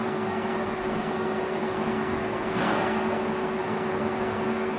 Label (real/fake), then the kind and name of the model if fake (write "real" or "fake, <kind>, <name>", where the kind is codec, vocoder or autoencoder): fake, codec, SNAC